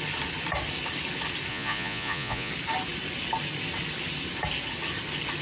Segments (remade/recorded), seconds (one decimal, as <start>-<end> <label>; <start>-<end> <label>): 0.0-1.5 recorded; 1.5-2.5 remade; 2.5-5.4 recorded

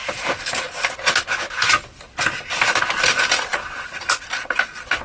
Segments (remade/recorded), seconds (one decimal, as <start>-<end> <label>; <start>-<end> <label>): 0.0-5.0 recorded